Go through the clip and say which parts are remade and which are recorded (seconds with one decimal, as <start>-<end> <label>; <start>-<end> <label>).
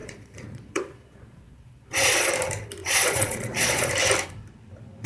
0.0-2.3 remade; 2.3-2.8 recorded; 2.8-3.9 remade; 3.9-5.1 recorded